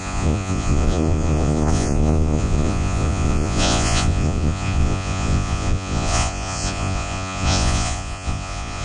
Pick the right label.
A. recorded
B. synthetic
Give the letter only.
B